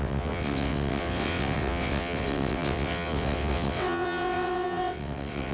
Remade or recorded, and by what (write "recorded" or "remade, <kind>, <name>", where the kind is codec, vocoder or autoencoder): remade, vocoder, WaveNeXt